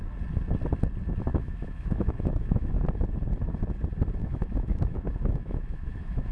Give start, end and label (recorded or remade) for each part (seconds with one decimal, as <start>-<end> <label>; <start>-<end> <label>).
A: 0.0-1.3 recorded; 1.3-2.8 remade; 2.8-4.2 recorded; 4.2-6.3 remade